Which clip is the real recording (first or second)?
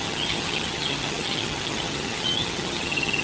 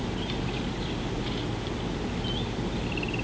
second